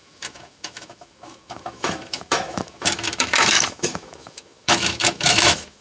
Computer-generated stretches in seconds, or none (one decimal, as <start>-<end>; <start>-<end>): 0.0-5.8